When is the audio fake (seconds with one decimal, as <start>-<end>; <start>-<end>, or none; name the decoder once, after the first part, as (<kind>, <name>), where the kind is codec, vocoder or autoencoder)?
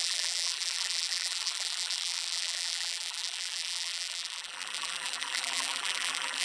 0.0-6.4 (vocoder, BigVGAN v2)